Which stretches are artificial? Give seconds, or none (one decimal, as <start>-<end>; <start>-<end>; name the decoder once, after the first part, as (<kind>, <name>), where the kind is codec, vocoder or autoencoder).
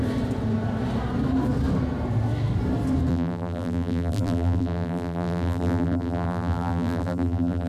3.1-7.7 (vocoder, BigVGAN v2)